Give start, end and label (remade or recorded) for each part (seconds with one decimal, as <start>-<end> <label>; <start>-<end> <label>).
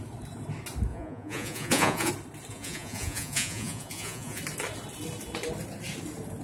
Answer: 0.0-0.9 recorded; 0.9-2.1 remade; 2.1-2.5 recorded; 2.5-4.4 remade; 4.4-6.4 recorded